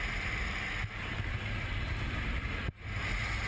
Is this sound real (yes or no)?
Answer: yes